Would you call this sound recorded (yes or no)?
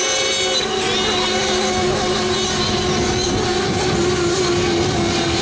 yes